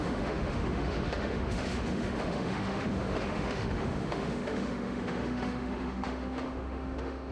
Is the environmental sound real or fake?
fake